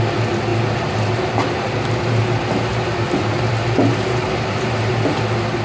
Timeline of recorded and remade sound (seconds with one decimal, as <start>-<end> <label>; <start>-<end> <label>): 0.0-0.5 recorded; 0.5-3.5 remade; 3.5-3.9 recorded; 3.9-4.9 remade; 4.9-5.6 recorded